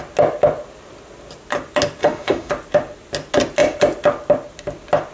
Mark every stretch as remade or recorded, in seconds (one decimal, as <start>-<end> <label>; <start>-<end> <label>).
0.0-2.0 recorded; 2.0-2.5 remade; 2.5-5.1 recorded